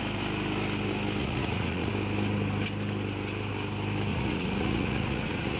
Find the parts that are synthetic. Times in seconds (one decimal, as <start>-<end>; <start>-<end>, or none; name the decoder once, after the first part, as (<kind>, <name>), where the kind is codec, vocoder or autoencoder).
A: 1.2-1.9 (vocoder, Vocos); 4.1-5.6